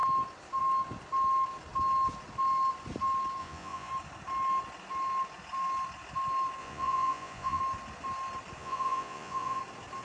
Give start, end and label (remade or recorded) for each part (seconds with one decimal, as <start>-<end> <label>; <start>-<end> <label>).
0.0-3.4 recorded; 3.4-3.9 remade; 3.9-6.6 recorded; 6.6-7.6 remade; 7.6-8.6 recorded; 8.6-9.6 remade; 9.6-10.0 recorded